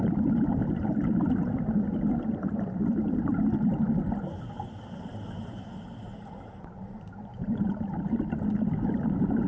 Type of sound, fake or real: real